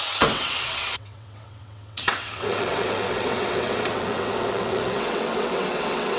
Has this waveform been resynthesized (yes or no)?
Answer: yes